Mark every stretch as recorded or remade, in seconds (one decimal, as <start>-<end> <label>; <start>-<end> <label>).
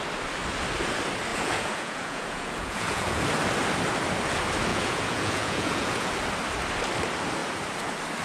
0.0-1.3 recorded; 1.3-3.2 remade; 3.2-4.7 recorded; 4.7-6.1 remade; 6.1-8.2 recorded